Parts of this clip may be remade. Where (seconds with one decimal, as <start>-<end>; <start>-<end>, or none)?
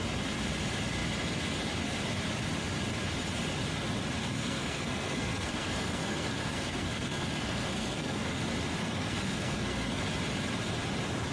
4.2-8.4; 8.8-10.0